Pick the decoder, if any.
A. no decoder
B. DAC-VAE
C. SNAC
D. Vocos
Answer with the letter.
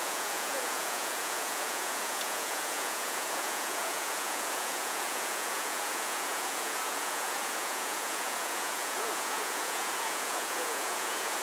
D